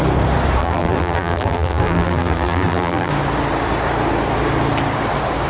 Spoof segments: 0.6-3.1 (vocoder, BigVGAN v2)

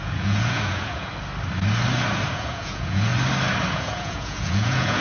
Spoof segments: 0.0-1.1 (vocoder, Vocos); 2.3-3.1; 3.7-5.0

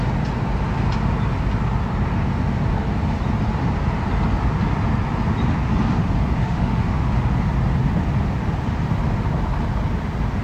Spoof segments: 6.4-7.1 (autoencoder, DAC-VAE)

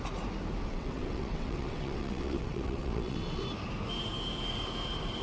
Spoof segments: 0.6-3.4 (vocoder, WaveNeXt)

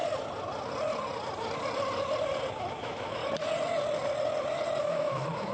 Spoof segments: 2.6-3.2 (autoencoder, DAC-VAE); 4.8-5.5

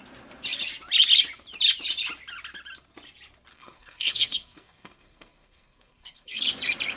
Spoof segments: 3.5-6.4 (codec, SNAC)

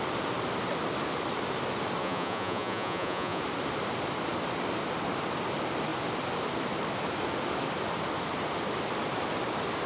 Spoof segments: 2.0-3.4 (vocoder, Vocos)